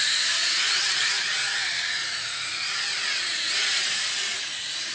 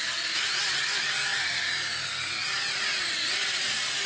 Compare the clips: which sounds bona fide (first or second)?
second